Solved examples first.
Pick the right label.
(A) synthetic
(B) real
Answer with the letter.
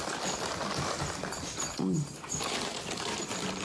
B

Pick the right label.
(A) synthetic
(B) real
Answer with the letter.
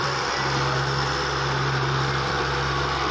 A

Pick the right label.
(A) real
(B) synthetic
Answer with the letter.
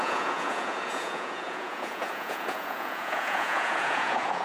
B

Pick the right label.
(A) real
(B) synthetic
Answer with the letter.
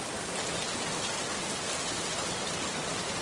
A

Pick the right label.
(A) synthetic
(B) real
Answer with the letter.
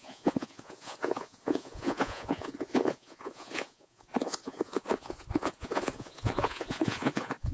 A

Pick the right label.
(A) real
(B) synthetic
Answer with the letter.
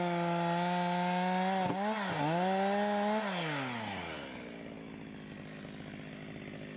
A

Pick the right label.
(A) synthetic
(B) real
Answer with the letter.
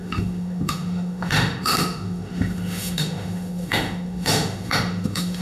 A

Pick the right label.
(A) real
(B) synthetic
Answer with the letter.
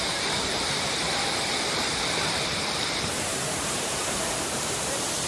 B